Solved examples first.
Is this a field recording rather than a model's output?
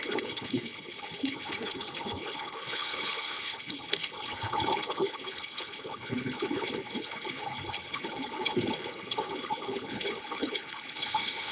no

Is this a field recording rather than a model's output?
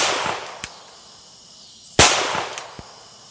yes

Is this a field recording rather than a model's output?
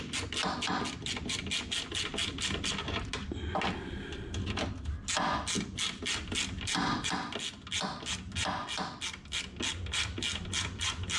yes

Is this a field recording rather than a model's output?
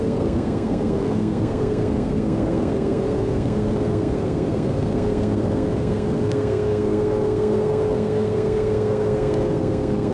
no